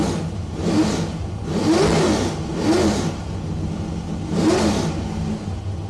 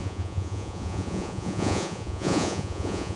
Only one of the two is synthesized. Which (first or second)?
second